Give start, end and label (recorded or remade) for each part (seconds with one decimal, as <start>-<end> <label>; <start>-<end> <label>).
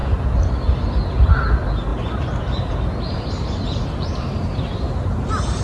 0.0-1.9 recorded; 1.9-5.6 remade